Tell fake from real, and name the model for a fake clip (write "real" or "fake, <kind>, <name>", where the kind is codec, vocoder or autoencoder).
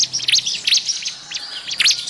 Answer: real